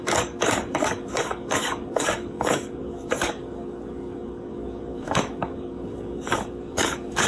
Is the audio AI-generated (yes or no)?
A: yes